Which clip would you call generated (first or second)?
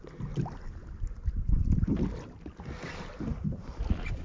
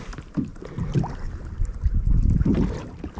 second